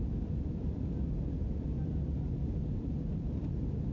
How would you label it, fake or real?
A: fake